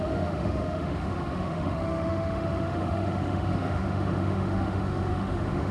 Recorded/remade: remade